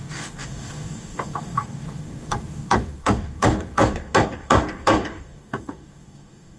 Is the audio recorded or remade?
remade